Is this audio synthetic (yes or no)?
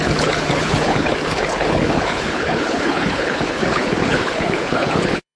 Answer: yes